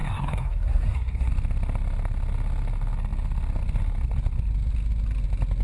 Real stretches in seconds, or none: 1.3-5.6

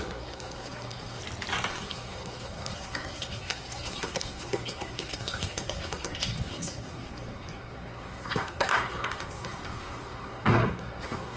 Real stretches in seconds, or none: 1.2-1.7

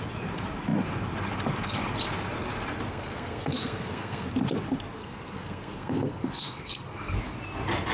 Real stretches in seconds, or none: 0.0-2.9; 4.3-5.0; 7.2-7.9

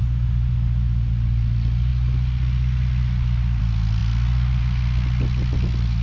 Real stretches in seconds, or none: 0.0-6.0

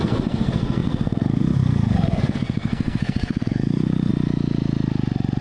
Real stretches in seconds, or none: 4.1-5.4